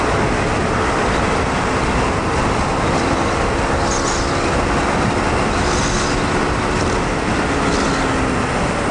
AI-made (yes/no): no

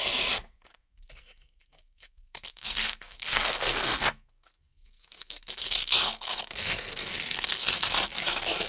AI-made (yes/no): yes